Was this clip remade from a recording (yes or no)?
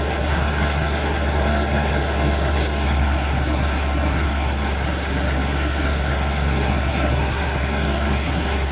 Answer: yes